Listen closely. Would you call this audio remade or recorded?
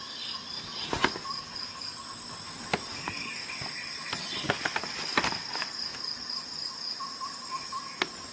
recorded